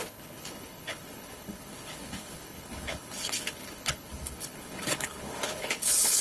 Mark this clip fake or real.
fake